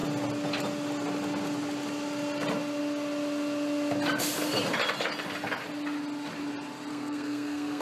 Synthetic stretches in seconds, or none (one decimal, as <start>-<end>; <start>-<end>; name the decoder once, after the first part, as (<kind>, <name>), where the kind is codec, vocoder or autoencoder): 6.9-7.8 (codec, SNAC)